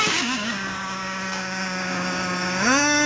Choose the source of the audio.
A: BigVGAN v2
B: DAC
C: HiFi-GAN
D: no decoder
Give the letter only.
B